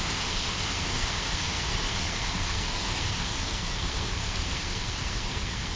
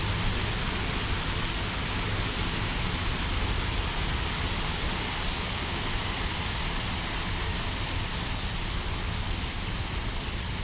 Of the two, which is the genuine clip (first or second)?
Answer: second